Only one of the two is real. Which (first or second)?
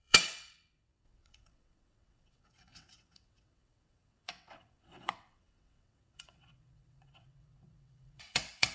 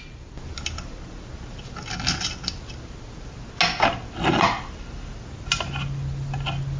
second